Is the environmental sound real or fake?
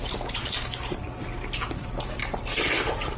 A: fake